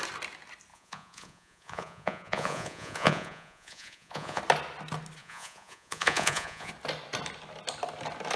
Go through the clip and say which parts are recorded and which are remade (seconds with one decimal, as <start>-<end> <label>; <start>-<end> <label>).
0.0-0.7 recorded; 0.7-4.4 remade; 4.4-5.2 recorded; 5.2-6.7 remade; 6.7-8.4 recorded

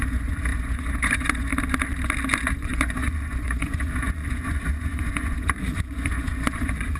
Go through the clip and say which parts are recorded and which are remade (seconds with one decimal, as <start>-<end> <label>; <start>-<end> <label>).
0.0-1.5 remade; 1.5-2.5 recorded; 2.5-7.0 remade

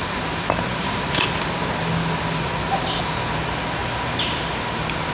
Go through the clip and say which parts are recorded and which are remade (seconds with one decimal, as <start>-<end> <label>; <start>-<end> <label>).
0.0-5.1 recorded

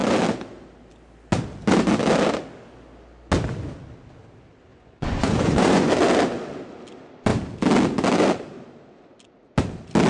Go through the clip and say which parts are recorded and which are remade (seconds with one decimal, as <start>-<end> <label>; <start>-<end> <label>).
0.0-4.7 recorded; 4.7-5.9 remade; 5.9-10.1 recorded

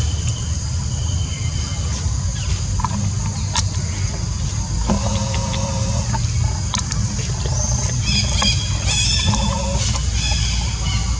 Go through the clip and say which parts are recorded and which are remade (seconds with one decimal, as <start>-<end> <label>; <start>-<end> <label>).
0.0-11.2 recorded

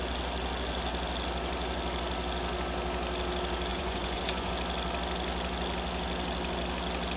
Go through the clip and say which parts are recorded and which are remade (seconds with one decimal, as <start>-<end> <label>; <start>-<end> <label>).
0.0-3.7 recorded; 3.7-4.5 remade; 4.5-7.2 recorded

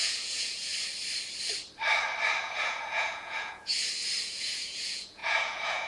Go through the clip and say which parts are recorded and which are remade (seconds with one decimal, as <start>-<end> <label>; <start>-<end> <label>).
0.0-0.7 remade; 0.7-2.4 recorded; 2.4-3.7 remade; 3.7-4.2 recorded; 4.2-5.9 remade